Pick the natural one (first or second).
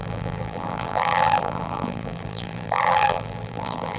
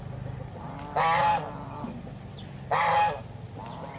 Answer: second